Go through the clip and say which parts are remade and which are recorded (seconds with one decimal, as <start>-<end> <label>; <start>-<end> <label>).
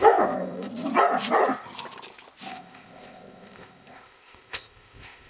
0.0-0.7 remade; 0.7-2.5 recorded; 2.5-5.3 remade